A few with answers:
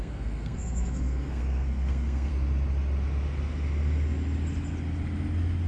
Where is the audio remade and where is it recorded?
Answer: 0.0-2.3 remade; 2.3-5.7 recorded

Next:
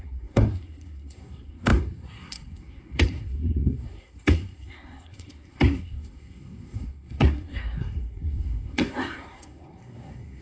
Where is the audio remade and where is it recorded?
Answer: 0.0-10.4 remade

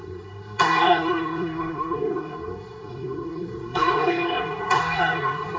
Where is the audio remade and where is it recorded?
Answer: 0.0-5.6 remade

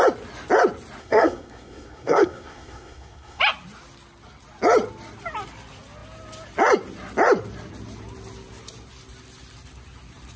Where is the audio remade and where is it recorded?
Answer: 0.0-1.0 recorded; 1.0-3.4 remade; 3.4-10.4 recorded

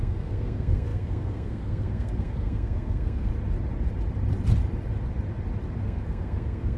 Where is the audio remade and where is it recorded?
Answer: 0.0-3.3 remade; 3.3-5.8 recorded; 5.8-6.8 remade

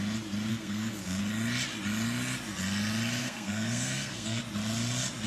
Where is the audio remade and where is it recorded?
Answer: 0.0-0.5 recorded; 0.5-1.2 remade; 1.2-3.2 recorded; 3.2-4.4 remade; 4.4-5.3 recorded